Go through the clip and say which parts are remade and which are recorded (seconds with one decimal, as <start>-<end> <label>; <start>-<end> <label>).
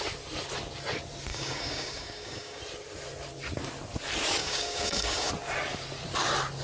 0.0-1.3 recorded; 1.3-2.6 remade; 2.6-4.4 recorded; 4.4-5.3 remade; 5.3-6.6 recorded